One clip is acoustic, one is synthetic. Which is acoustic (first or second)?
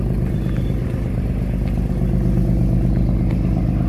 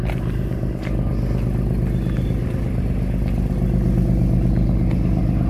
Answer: second